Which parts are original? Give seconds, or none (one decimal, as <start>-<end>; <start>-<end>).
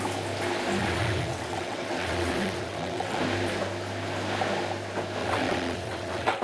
0.0-0.8; 3.2-5.2